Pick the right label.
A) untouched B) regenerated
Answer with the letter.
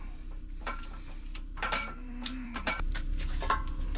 B